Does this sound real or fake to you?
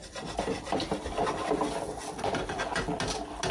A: real